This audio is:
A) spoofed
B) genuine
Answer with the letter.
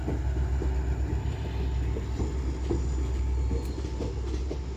B